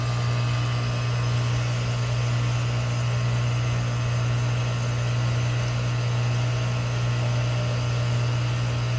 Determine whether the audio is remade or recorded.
recorded